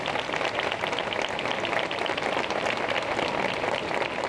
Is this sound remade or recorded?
recorded